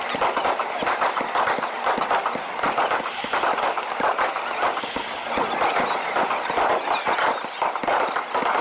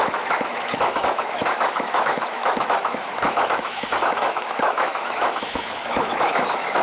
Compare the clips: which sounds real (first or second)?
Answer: first